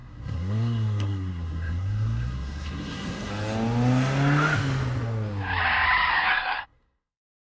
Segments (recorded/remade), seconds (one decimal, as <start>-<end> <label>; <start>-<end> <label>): 0.0-3.3 remade; 3.3-6.1 recorded; 6.1-7.5 remade